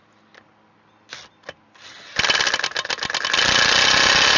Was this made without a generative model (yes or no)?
yes